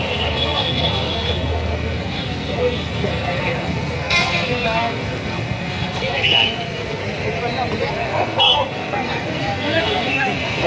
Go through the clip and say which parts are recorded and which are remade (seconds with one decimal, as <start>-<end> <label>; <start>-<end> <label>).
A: 0.0-7.0 remade; 7.0-7.9 recorded; 7.9-10.7 remade

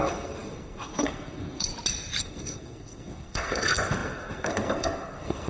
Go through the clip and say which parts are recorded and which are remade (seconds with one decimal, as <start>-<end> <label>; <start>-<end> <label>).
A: 0.0-1.7 remade; 1.7-2.2 recorded; 2.2-5.5 remade

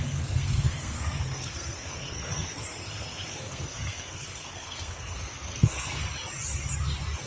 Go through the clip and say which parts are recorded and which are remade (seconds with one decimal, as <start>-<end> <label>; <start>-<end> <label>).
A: 0.0-6.0 remade; 6.0-7.3 recorded

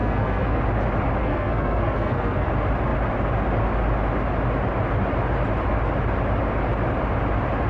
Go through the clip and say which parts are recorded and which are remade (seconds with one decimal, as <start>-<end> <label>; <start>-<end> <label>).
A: 0.0-0.6 remade; 0.6-1.2 recorded; 1.2-2.5 remade; 2.5-7.7 recorded